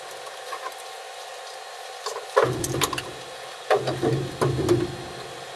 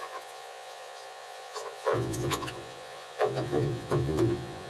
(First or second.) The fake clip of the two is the second